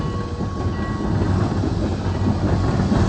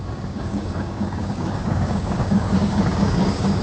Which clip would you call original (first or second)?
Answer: first